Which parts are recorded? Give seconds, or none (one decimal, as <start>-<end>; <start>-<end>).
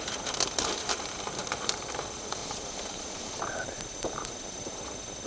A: 0.0-2.4; 4.8-5.3